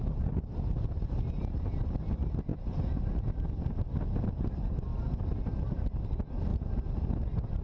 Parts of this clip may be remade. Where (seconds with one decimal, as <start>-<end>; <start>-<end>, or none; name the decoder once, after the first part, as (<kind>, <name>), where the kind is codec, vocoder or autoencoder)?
none